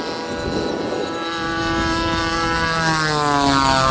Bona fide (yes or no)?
yes